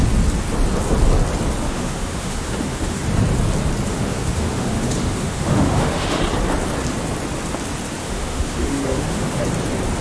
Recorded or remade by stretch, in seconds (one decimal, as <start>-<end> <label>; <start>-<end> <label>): 0.0-1.6 recorded; 1.6-3.0 remade; 3.0-3.9 recorded; 3.9-6.2 remade; 6.2-8.0 recorded; 8.0-9.4 remade; 9.4-10.0 recorded